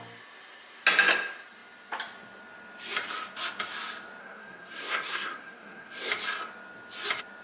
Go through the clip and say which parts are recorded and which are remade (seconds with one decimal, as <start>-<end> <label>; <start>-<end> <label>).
0.0-4.2 recorded; 4.2-6.1 remade; 6.1-7.4 recorded